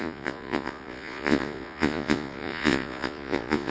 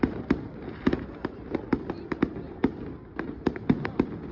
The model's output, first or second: first